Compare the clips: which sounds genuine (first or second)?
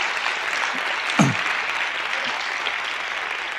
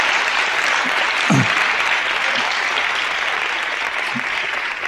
first